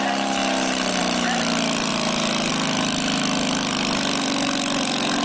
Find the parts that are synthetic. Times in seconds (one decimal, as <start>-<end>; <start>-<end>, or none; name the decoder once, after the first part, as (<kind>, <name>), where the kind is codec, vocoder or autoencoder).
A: none